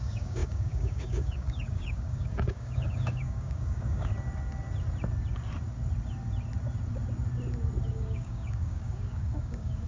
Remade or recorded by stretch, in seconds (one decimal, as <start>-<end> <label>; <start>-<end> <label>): 0.0-4.1 remade; 4.1-7.9 recorded; 7.9-9.9 remade